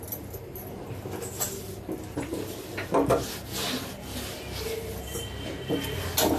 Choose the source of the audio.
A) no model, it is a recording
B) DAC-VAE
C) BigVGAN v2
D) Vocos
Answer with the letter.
A